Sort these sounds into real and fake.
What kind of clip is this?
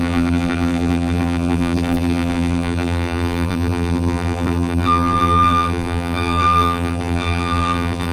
fake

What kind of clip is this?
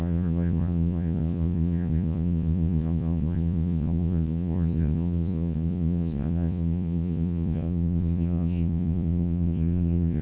fake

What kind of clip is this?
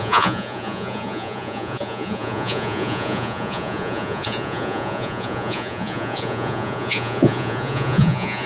fake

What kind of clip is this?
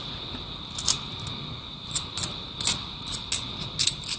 real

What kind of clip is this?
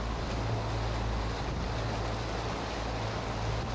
real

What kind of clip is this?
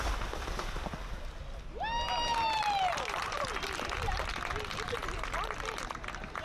real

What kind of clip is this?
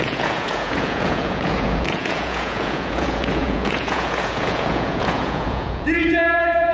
fake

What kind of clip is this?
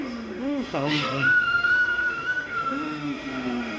fake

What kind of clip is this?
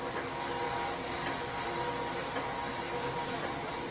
real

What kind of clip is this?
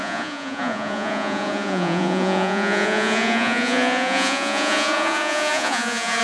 fake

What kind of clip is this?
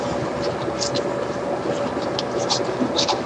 real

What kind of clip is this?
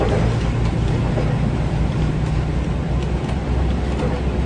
real